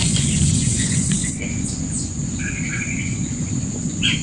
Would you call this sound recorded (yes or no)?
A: no